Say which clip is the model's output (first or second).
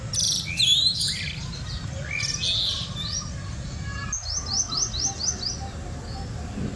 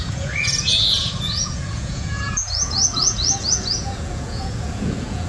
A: second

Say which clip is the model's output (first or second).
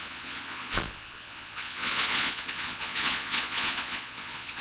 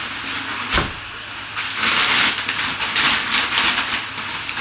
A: first